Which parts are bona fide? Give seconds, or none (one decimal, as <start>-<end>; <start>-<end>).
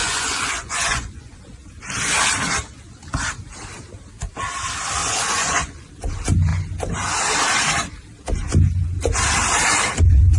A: 1.4-5.0; 5.9-10.4